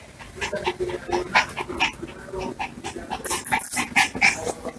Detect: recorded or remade recorded